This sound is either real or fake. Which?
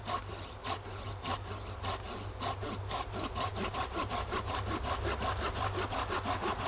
real